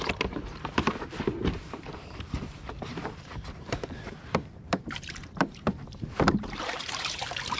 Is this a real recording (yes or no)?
no